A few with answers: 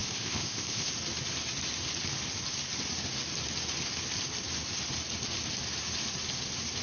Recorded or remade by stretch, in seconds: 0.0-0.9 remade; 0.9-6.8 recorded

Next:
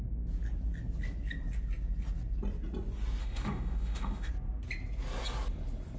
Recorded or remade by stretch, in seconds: 0.0-3.2 recorded; 3.2-4.3 remade; 4.3-6.0 recorded